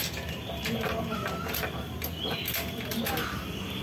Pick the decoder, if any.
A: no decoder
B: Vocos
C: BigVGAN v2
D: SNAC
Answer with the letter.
C